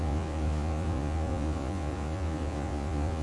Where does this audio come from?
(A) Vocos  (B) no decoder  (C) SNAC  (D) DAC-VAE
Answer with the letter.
A